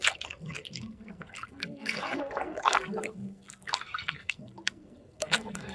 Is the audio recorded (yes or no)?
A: no